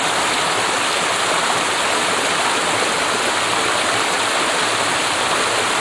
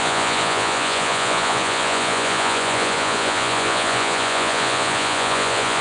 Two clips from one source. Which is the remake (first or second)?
second